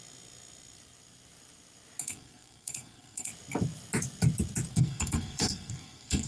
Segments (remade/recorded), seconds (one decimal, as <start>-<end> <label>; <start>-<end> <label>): 0.0-2.0 recorded; 2.0-3.3 remade; 3.3-4.7 recorded; 4.7-6.3 remade